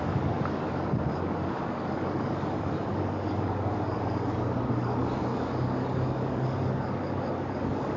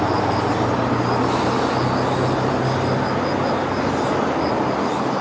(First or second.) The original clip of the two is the second